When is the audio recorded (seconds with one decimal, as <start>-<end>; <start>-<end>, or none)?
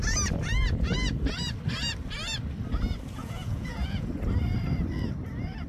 0.0-3.2; 4.1-5.7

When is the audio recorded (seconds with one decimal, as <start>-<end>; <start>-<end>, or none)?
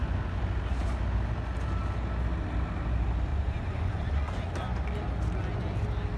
0.0-3.3; 4.5-6.2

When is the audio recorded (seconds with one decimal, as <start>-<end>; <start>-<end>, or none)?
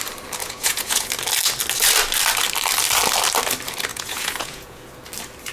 0.0-0.4; 1.1-3.9; 4.9-5.5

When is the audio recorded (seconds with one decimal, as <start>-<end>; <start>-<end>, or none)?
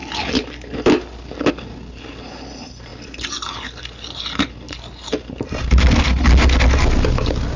0.0-7.6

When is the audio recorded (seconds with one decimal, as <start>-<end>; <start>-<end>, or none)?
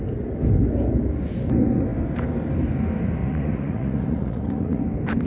0.0-3.2; 4.8-5.3